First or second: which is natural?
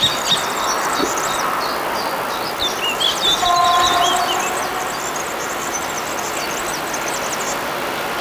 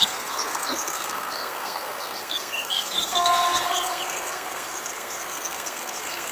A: first